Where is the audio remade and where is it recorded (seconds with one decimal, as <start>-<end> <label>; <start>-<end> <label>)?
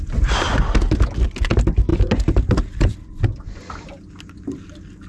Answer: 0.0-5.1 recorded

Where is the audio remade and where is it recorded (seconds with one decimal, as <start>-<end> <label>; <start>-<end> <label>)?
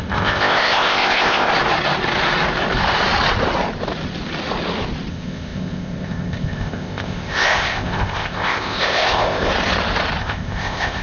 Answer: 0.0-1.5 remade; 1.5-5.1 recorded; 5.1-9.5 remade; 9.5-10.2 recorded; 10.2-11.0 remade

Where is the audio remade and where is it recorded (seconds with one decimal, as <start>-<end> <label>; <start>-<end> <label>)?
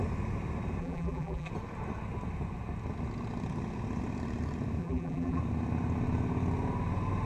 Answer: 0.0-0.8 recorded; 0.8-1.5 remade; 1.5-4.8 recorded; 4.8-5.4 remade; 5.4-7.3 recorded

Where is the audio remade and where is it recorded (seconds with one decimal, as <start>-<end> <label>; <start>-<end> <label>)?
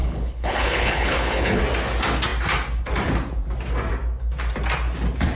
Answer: 0.0-1.6 remade; 1.6-5.3 recorded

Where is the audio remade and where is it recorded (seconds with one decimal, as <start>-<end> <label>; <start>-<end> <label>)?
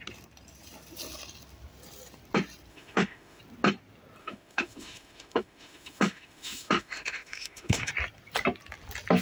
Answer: 0.0-2.7 recorded; 2.7-3.4 remade; 3.4-4.2 recorded; 4.2-7.9 remade; 7.9-9.2 recorded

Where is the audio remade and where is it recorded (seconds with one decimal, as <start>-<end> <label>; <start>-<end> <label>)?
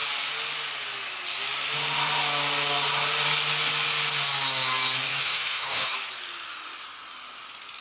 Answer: 0.0-5.1 recorded; 5.1-6.1 remade; 6.1-7.8 recorded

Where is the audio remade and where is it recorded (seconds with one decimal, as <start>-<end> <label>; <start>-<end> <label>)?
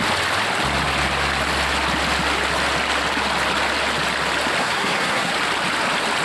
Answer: 0.0-4.6 recorded; 4.6-5.3 remade; 5.3-6.2 recorded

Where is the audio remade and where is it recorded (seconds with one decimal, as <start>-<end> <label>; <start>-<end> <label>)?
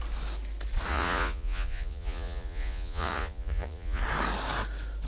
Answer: 0.0-0.9 recorded; 0.9-4.0 remade; 4.0-5.1 recorded